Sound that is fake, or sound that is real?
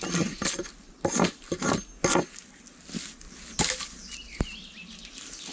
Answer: real